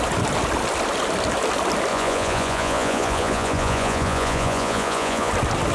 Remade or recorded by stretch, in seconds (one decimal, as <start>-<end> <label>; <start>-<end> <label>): 0.0-1.9 recorded; 1.9-5.3 remade; 5.3-5.7 recorded